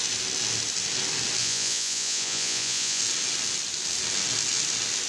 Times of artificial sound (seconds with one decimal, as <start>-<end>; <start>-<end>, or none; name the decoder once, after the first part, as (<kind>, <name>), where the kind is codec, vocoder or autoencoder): 1.4-3.0 (vocoder, Vocos)